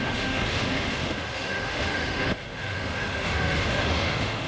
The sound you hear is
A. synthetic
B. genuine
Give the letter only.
A